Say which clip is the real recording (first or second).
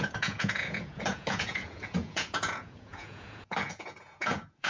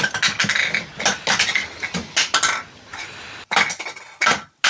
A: second